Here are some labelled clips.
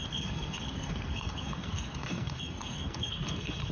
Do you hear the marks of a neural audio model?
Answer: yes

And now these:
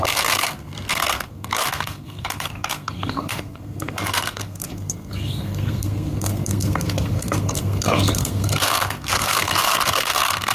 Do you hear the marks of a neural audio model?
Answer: yes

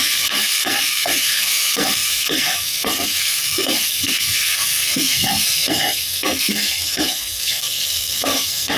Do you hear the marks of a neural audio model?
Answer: yes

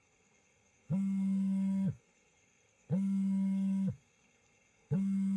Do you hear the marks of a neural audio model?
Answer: yes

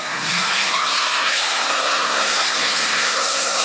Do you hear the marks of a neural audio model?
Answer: yes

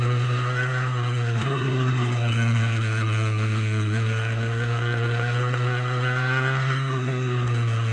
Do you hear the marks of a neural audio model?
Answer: yes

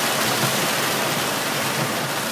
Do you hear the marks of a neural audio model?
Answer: no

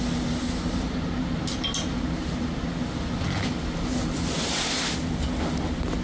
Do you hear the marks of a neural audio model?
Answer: no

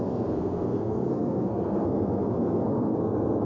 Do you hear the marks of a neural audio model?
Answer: yes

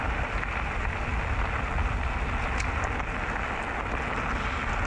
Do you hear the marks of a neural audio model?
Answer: no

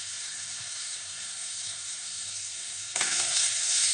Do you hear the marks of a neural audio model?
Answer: yes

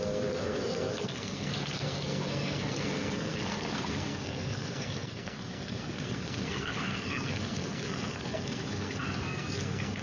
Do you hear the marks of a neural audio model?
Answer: yes